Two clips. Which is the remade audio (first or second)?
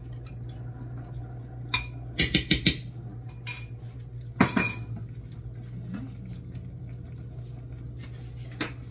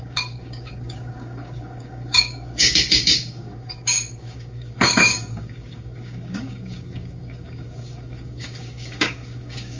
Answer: second